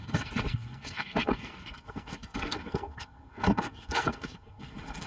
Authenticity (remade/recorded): remade